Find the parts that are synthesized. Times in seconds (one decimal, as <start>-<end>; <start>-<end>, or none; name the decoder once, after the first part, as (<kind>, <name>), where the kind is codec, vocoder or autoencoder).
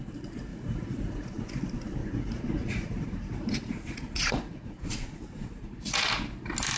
0.5-1.5 (vocoder, Vocos); 2.0-6.1